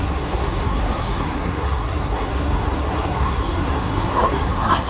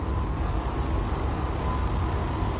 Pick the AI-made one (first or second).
first